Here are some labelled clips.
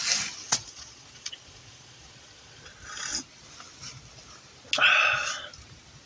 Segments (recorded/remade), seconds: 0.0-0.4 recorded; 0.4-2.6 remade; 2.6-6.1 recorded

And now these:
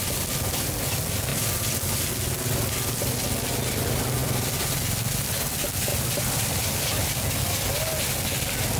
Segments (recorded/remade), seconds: 0.0-1.3 recorded; 1.3-2.1 remade; 2.1-5.9 recorded; 5.9-7.1 remade; 7.1-8.8 recorded

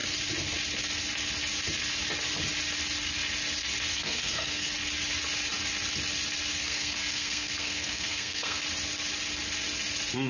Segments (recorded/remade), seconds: 0.0-3.9 recorded; 3.9-4.7 remade; 4.7-6.5 recorded; 6.5-8.6 remade; 8.6-10.3 recorded

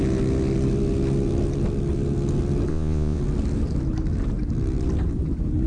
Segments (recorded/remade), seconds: 0.0-2.7 recorded; 2.7-3.2 remade; 3.2-5.7 recorded

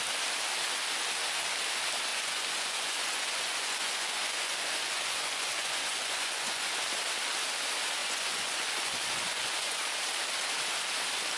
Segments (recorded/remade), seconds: 0.0-2.1 recorded; 2.1-6.7 remade; 6.7-8.0 recorded; 8.0-9.8 remade; 9.8-11.4 recorded